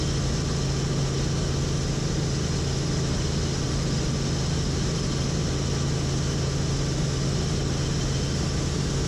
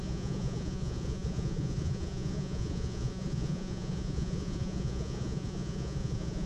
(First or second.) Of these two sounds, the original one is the first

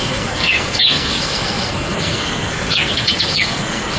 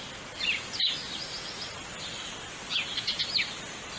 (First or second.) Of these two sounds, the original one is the second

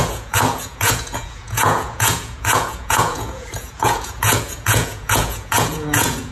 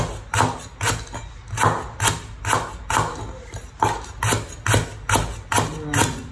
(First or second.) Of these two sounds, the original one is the second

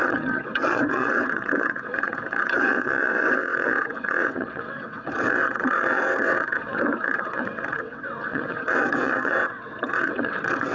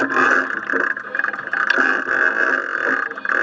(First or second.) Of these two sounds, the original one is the second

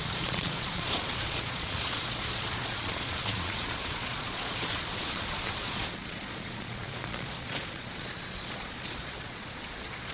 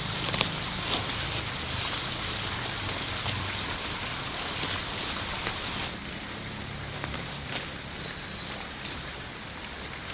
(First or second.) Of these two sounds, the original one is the second